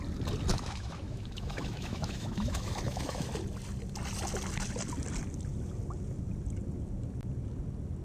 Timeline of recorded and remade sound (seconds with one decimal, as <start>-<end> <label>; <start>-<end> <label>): 0.0-0.5 recorded; 0.5-3.3 remade; 3.3-8.0 recorded